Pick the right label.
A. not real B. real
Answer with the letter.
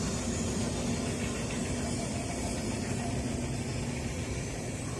B